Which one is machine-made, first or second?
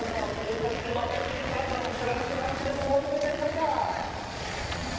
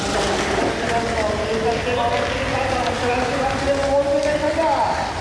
first